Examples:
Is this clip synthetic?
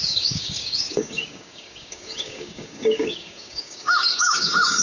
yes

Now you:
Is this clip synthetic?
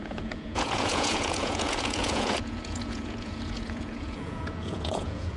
yes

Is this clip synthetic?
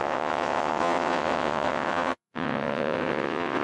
yes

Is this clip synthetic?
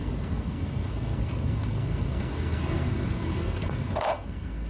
yes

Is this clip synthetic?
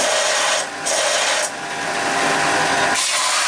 no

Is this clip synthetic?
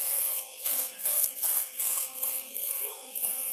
yes